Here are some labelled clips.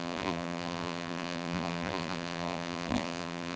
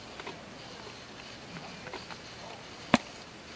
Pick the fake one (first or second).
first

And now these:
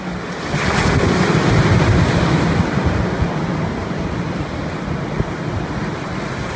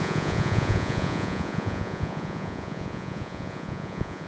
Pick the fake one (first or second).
second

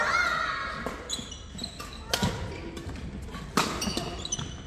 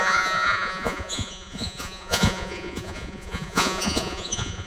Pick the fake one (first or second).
second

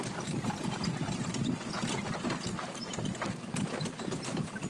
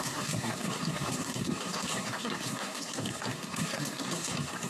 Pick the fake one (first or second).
second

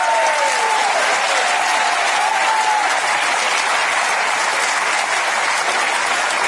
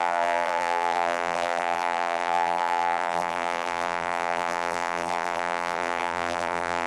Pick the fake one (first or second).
second